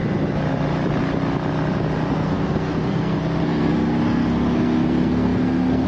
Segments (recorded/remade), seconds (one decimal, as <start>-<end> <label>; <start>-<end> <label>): 0.0-2.1 recorded; 2.1-5.9 remade

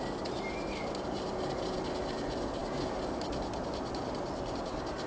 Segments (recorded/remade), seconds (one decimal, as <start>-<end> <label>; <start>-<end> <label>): 0.0-5.1 recorded

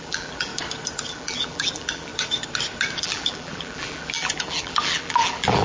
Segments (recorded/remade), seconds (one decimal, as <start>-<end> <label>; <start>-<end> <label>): 0.0-0.5 remade; 0.5-1.1 recorded; 1.1-2.1 remade; 2.1-3.0 recorded; 3.0-5.6 remade

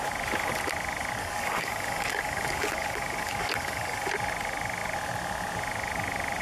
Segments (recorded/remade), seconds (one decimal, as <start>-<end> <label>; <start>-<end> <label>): 0.0-1.2 recorded; 1.2-4.1 remade; 4.1-6.4 recorded

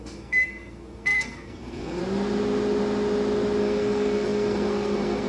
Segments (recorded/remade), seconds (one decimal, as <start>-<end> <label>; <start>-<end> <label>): 0.0-2.0 remade; 2.0-3.6 recorded; 3.6-5.3 remade